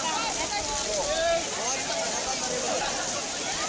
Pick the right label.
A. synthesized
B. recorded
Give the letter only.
B